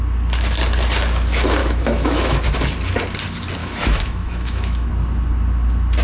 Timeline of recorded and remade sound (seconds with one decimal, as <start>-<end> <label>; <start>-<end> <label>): 0.0-1.6 recorded; 1.6-2.4 remade; 2.4-3.6 recorded; 3.6-4.9 remade; 4.9-6.0 recorded